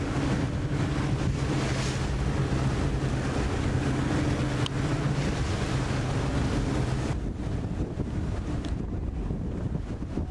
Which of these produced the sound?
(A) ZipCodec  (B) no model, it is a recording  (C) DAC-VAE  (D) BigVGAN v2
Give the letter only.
B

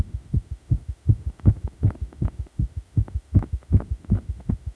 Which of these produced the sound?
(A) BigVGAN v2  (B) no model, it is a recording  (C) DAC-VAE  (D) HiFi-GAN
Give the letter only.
C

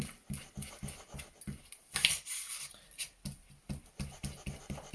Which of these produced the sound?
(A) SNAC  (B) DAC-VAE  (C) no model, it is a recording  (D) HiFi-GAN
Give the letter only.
C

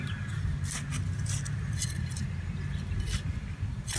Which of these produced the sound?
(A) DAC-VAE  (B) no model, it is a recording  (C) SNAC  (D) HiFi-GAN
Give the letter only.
B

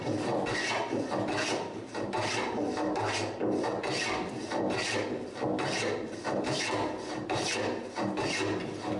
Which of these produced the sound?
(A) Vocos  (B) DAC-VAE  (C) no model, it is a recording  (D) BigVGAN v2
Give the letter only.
C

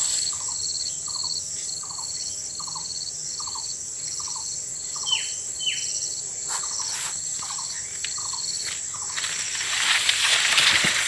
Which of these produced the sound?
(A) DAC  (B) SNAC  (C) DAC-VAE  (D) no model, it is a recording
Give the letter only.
D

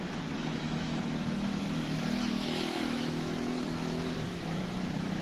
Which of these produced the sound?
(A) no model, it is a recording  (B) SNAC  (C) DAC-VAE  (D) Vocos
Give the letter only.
C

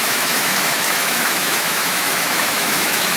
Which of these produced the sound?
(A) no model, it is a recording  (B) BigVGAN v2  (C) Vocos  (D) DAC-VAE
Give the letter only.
D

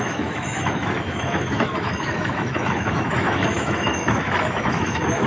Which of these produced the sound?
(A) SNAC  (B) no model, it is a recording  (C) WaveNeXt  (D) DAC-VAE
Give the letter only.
D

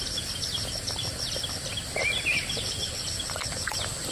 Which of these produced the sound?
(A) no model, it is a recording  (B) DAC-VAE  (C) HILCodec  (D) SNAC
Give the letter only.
A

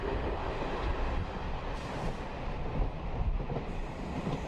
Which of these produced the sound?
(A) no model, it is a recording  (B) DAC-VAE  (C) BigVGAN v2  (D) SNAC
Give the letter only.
A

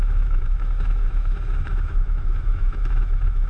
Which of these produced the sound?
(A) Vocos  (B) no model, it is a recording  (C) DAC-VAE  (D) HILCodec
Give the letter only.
C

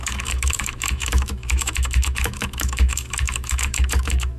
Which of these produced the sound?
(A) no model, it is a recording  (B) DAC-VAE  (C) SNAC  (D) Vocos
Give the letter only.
B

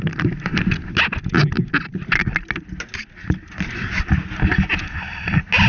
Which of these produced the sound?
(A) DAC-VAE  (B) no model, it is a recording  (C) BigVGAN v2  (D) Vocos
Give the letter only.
B